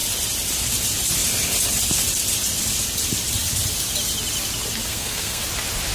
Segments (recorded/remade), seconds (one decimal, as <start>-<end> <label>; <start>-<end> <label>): 0.0-4.9 recorded; 4.9-5.4 remade; 5.4-5.9 recorded